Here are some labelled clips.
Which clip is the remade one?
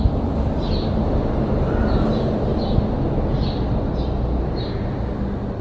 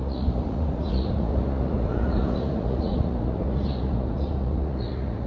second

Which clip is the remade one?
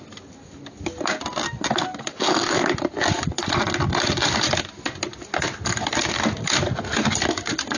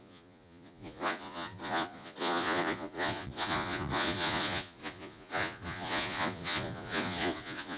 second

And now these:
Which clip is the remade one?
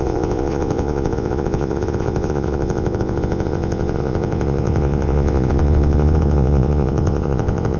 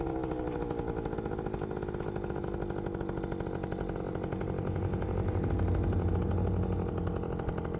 first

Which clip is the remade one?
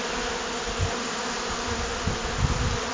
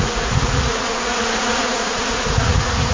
second